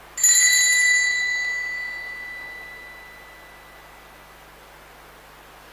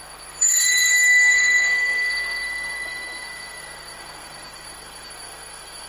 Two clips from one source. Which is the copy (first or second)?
second